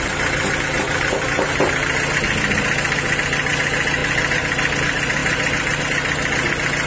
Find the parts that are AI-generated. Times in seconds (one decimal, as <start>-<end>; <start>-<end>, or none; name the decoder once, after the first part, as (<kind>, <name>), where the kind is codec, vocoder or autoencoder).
none